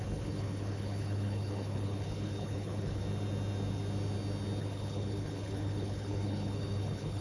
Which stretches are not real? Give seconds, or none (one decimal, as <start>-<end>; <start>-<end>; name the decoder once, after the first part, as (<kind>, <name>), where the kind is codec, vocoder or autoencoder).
0.0-3.0 (codec, HILCodec); 4.6-7.2